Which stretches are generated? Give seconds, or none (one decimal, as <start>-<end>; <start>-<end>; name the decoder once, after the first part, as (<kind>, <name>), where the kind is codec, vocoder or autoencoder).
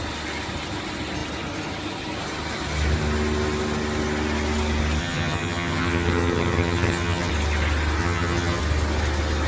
5.0-7.3 (vocoder, HiFi-GAN); 8.0-8.6